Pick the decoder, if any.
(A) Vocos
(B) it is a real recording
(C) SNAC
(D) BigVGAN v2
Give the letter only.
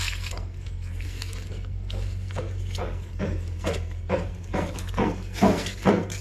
C